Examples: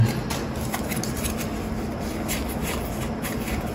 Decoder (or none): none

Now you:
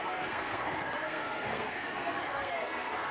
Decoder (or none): codec, SNAC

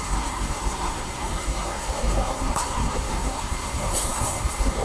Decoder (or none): codec, SNAC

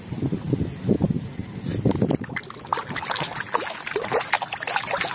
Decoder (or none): none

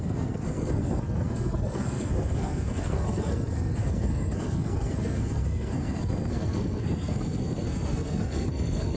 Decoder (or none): codec, SNAC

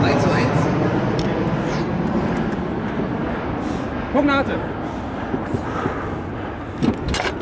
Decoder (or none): none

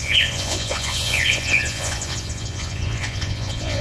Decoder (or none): vocoder, Vocos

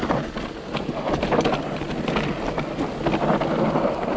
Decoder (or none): none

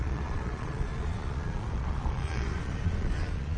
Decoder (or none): vocoder, Vocos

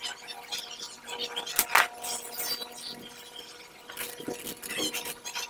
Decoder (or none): none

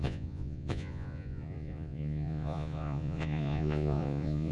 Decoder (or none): vocoder, Vocos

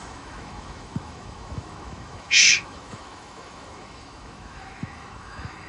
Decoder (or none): autoencoder, DAC-VAE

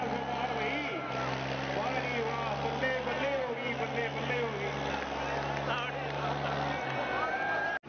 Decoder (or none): none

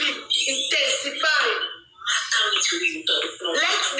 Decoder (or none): none